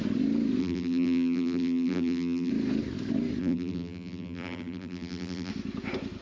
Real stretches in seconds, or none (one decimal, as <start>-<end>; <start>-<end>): 0.0-0.6; 2.5-3.4; 5.5-6.2